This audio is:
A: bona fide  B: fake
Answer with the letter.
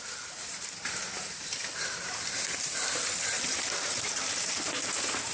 B